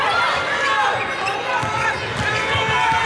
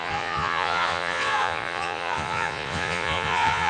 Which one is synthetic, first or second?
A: second